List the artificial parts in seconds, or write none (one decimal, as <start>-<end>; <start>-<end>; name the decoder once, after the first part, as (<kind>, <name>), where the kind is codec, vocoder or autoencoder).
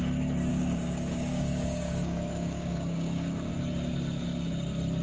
0.5-3.5 (codec, DAC)